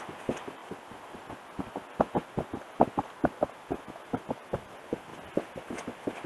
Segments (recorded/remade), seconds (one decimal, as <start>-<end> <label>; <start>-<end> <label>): 0.0-6.3 recorded